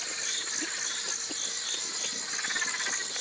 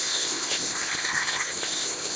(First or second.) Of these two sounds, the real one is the first